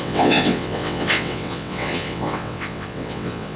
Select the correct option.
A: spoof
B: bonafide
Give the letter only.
A